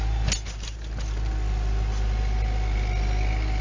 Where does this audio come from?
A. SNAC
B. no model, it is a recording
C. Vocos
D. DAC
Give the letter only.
B